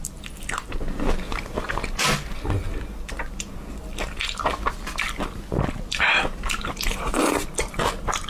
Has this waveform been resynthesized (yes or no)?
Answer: no